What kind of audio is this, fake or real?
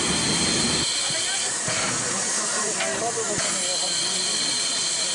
real